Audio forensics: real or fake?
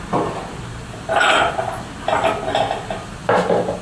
real